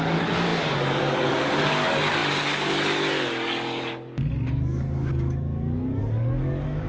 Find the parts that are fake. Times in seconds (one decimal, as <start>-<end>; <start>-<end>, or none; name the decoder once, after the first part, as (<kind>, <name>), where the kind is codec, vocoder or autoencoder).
0.0-6.9 (codec, DAC)